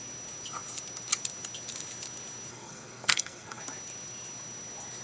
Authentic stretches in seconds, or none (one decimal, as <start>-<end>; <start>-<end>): 0.0-2.5; 3.6-5.0